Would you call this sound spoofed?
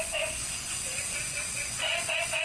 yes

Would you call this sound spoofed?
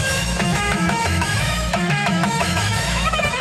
yes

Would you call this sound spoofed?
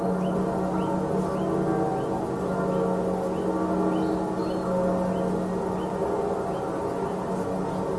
no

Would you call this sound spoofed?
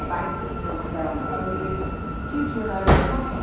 no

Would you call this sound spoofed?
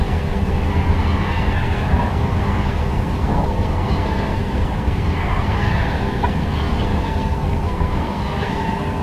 yes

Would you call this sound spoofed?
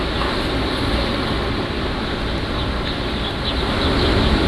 no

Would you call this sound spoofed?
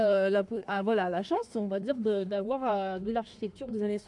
yes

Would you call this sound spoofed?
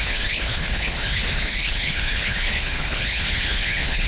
yes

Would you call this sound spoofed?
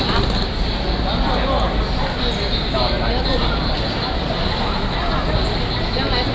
no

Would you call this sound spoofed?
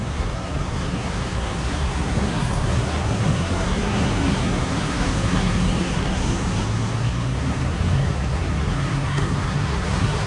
yes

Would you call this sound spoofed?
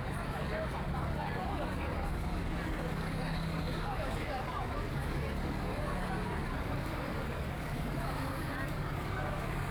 yes